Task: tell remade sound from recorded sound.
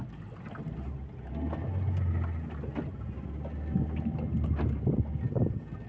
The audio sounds recorded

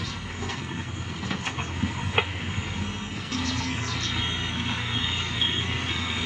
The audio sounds remade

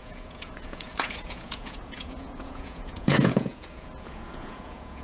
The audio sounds remade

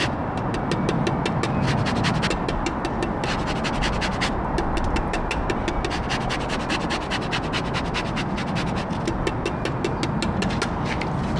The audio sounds recorded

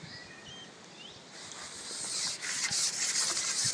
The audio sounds recorded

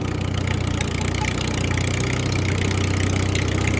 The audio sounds recorded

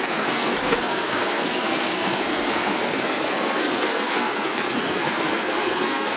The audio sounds remade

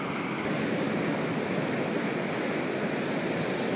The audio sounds recorded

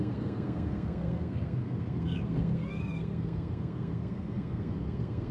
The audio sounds remade